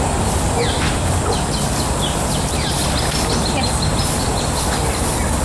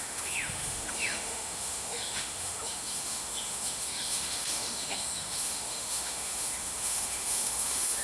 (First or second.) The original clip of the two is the first